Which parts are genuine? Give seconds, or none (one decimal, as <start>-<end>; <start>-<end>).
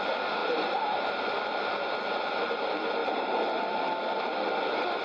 0.0-0.4; 1.6-3.0; 3.6-5.0